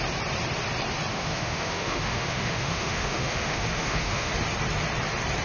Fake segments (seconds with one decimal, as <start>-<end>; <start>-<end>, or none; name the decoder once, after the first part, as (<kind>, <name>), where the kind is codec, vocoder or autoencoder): 1.1-4.3 (autoencoder, DAC-VAE)